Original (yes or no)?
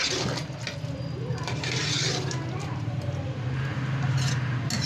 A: yes